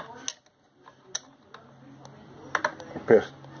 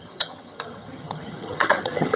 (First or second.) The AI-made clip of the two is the second